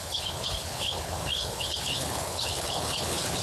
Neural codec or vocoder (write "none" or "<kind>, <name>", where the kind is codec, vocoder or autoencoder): codec, HILCodec